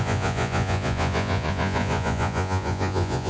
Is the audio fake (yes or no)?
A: yes